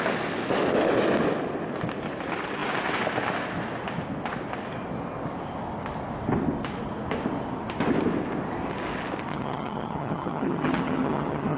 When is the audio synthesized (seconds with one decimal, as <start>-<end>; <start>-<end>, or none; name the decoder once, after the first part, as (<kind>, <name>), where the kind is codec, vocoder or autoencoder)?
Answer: 9.3-11.6 (vocoder, HiFi-GAN)